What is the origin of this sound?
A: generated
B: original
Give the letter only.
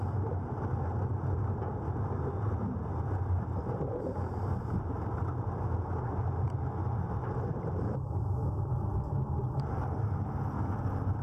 B